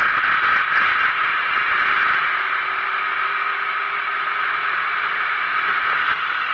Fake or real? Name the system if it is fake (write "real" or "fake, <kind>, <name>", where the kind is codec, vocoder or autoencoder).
real